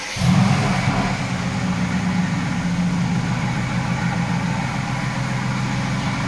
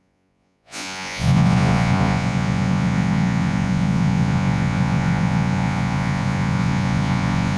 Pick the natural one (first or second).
first